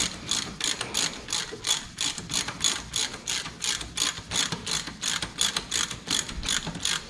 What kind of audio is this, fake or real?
real